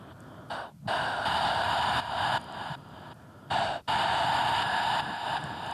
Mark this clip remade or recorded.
recorded